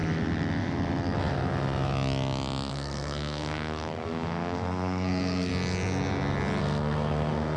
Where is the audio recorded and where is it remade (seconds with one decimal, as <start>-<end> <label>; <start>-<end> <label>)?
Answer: 0.0-2.7 recorded; 2.7-5.5 remade; 5.5-6.6 recorded; 6.6-7.6 remade

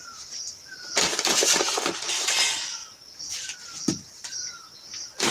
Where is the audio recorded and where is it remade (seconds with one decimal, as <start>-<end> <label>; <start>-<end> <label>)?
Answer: 0.0-5.3 recorded

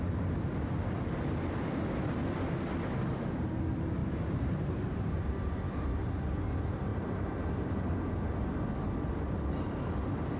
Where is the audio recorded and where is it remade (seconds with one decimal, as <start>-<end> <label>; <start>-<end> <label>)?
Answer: 0.0-4.0 recorded; 4.0-5.9 remade; 5.9-10.4 recorded